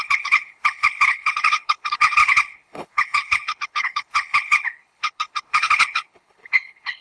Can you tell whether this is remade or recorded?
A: remade